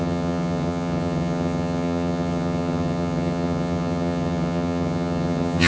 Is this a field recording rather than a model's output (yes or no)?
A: no